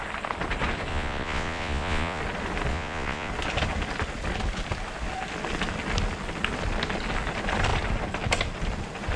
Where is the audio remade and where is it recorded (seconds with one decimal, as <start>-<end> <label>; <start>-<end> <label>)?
0.0-0.9 recorded; 0.9-2.2 remade; 2.2-2.7 recorded; 2.7-3.3 remade; 3.3-9.2 recorded